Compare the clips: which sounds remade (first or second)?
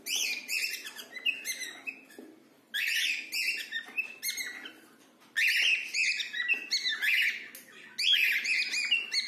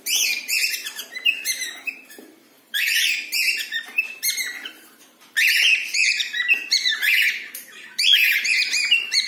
second